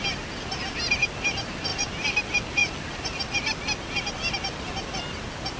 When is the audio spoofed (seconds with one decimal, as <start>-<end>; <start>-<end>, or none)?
1.7-2.2